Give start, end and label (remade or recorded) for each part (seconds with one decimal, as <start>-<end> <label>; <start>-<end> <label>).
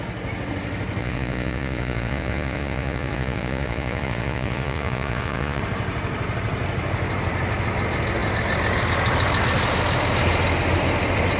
0.0-1.0 recorded; 1.0-5.6 remade; 5.6-11.4 recorded